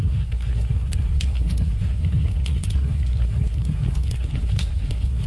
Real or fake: fake